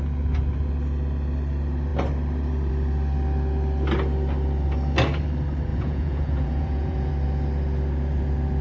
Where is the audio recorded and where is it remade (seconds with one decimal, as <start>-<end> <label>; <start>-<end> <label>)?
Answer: 0.0-5.7 recorded; 5.7-7.1 remade; 7.1-8.6 recorded